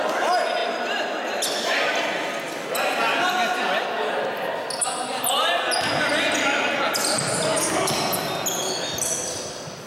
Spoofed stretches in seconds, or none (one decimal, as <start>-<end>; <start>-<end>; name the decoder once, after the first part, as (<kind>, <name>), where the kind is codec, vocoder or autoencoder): none